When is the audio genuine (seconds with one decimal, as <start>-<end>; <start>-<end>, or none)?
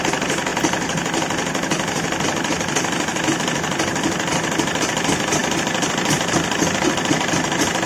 0.0-5.4; 6.8-7.9